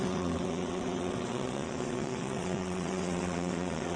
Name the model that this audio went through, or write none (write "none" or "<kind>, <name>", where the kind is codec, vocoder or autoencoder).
vocoder, WaveNeXt